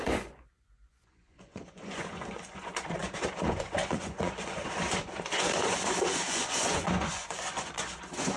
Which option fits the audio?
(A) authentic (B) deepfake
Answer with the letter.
B